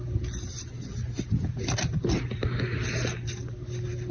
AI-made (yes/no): no